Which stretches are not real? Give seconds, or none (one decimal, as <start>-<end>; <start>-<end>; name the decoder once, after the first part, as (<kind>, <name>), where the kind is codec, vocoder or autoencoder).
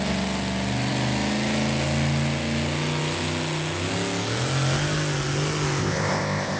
5.8-6.6 (codec, ZipCodec)